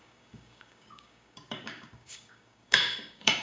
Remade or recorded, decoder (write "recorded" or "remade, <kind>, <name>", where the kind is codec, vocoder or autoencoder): remade, codec, DAC